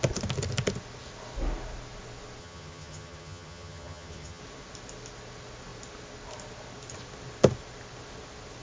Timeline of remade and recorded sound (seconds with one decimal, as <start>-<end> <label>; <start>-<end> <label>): 0.0-2.4 recorded; 2.4-4.4 remade; 4.4-8.6 recorded